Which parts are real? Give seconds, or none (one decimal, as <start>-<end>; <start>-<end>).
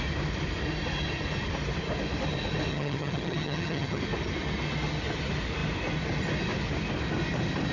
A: 0.0-2.7; 4.0-7.7